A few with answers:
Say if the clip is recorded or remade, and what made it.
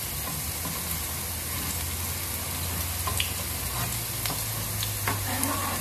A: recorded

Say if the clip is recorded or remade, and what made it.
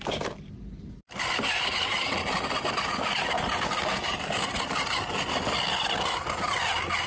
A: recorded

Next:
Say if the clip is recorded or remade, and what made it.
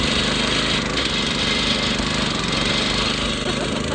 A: recorded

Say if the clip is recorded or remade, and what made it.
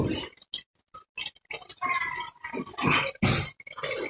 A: recorded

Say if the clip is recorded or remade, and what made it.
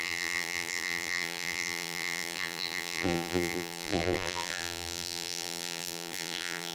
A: remade, vocoder, BigVGAN v2